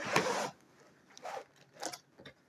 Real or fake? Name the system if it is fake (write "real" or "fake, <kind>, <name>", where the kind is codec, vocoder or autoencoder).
real